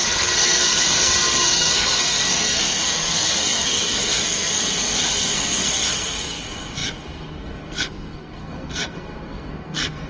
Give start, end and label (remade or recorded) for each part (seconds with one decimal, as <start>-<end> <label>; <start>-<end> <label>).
0.0-10.1 remade